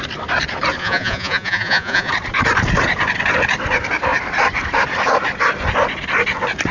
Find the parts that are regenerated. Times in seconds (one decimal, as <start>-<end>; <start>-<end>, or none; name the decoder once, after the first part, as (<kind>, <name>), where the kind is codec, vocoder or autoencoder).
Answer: 0.8-2.1 (vocoder, Vocos)